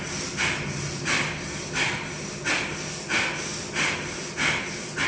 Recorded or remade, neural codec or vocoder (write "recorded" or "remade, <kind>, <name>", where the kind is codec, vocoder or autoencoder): recorded